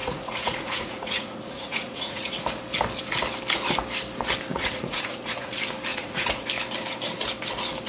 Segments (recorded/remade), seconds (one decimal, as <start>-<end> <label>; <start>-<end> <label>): 0.0-2.3 remade; 2.3-4.5 recorded; 4.5-5.5 remade; 5.5-5.9 recorded; 5.9-6.5 remade; 6.5-7.9 recorded